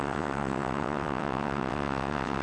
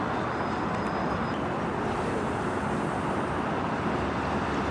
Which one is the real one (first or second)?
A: second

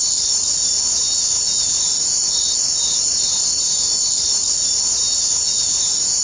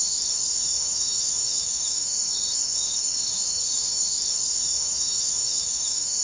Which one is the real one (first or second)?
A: first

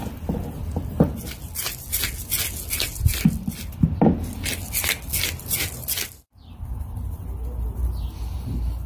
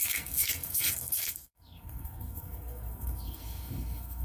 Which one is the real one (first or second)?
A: first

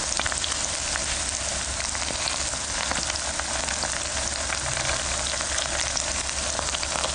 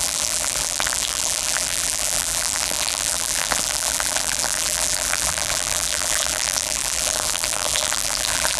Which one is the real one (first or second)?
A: first